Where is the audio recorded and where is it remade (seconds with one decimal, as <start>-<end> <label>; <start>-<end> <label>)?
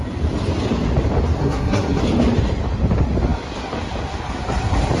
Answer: 0.0-1.4 recorded; 1.4-2.0 remade; 2.0-5.0 recorded